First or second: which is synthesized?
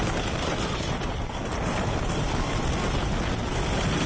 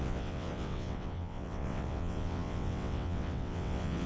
second